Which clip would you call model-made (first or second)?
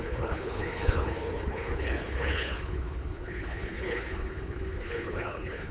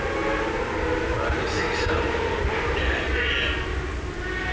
first